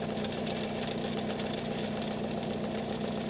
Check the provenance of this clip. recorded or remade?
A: recorded